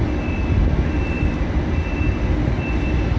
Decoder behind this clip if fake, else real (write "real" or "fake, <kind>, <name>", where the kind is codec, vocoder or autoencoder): real